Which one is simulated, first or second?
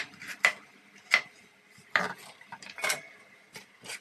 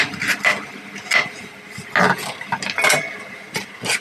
first